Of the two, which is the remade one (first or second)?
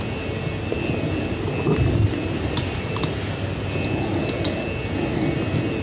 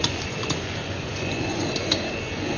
second